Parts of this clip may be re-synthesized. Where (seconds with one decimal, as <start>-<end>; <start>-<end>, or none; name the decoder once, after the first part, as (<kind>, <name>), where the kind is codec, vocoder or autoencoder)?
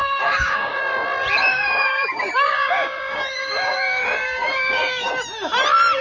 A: 0.0-0.8 (codec, DAC); 1.5-5.1